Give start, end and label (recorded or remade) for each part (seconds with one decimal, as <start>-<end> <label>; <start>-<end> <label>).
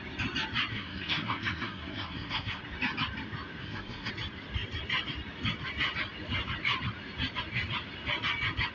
0.0-0.7 recorded; 0.7-2.6 remade; 2.6-3.6 recorded; 3.6-4.1 remade; 4.1-8.7 recorded